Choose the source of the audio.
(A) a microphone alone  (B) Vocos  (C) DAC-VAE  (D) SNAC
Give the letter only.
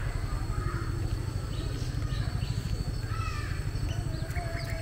A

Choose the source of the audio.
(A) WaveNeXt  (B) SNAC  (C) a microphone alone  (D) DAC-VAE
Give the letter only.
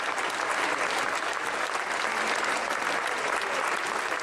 C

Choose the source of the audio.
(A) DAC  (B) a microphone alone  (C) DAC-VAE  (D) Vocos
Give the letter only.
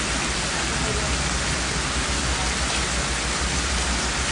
B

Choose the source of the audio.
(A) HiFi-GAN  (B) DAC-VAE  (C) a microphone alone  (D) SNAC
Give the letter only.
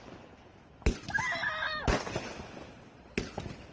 C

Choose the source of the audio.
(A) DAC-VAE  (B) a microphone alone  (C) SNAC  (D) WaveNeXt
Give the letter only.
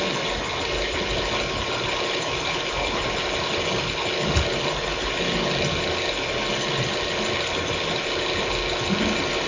B